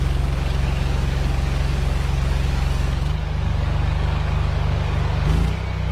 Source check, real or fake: fake